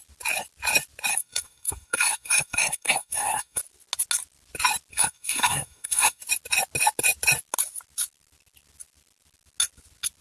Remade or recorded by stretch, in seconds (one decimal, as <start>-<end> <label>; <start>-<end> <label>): 0.0-1.1 recorded; 1.1-3.6 remade; 3.6-4.9 recorded; 4.9-6.2 remade; 6.2-10.2 recorded